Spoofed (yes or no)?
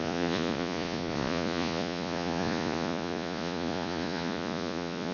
yes